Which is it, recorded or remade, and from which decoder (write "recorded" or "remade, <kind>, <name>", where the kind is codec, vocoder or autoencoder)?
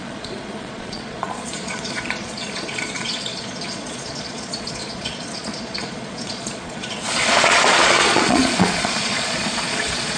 remade, vocoder, Vocos